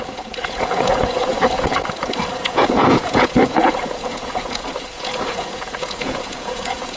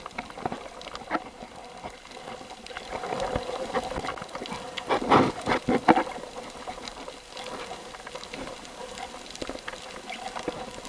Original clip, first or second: second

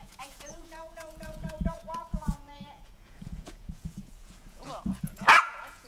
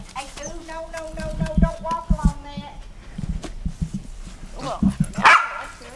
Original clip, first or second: second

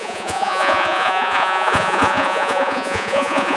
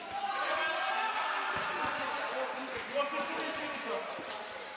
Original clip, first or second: second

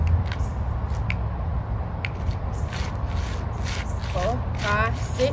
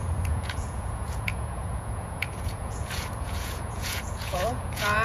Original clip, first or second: first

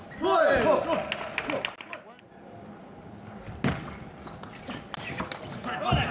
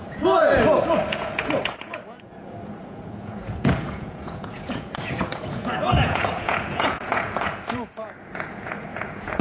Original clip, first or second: first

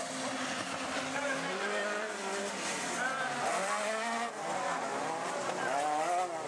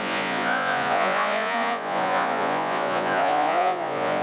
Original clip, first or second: first